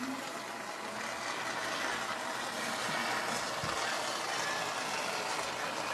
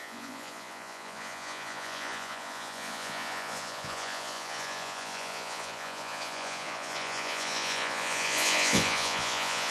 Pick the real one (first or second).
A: first